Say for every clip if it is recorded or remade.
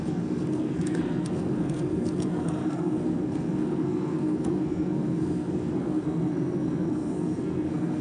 remade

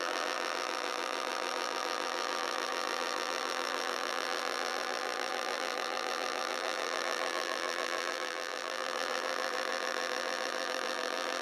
remade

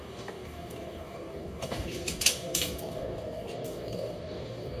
remade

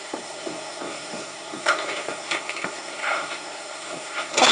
remade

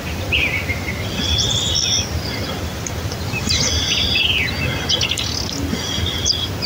recorded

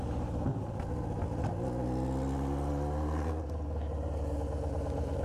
recorded